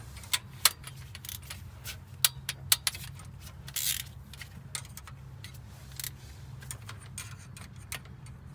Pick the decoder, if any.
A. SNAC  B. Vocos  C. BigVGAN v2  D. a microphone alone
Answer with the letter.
D